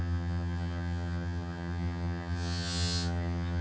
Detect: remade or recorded remade